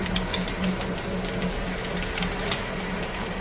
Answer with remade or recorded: recorded